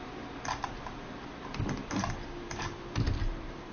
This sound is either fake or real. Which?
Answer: fake